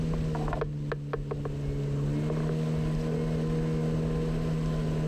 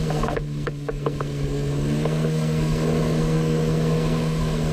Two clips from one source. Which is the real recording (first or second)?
first